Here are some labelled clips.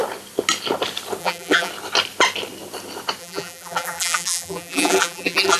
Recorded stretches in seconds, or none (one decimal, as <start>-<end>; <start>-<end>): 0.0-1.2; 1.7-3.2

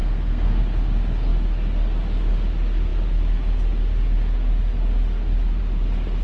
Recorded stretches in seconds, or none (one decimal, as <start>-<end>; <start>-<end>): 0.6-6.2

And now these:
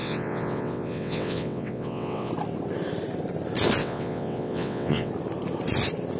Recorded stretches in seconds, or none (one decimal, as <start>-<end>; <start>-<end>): 2.3-3.8; 5.1-6.2

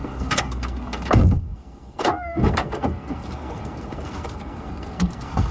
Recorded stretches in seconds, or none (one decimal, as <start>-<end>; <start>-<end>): none